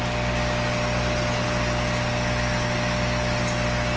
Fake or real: real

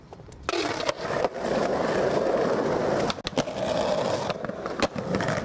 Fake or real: real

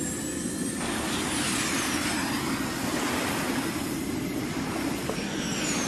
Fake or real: real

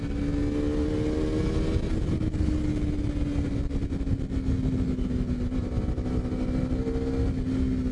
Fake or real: real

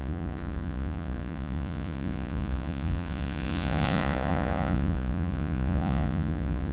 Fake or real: fake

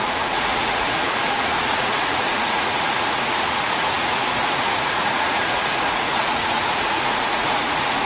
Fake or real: fake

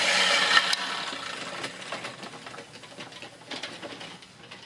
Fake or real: real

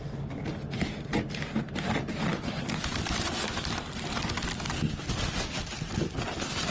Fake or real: real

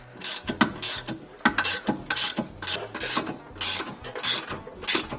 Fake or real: real